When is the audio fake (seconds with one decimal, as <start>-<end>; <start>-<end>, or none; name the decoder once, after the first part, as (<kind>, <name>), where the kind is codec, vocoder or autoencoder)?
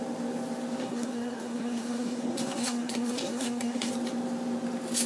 0.8-3.9 (codec, SNAC)